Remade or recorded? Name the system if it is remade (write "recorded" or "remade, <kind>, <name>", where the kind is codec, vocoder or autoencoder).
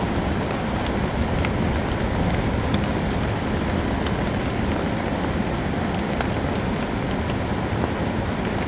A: recorded